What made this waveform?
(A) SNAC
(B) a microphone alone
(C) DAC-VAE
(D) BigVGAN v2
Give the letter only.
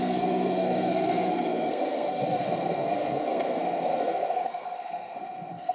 A